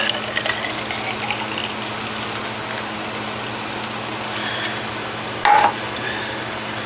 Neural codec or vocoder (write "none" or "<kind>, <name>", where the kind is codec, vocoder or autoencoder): none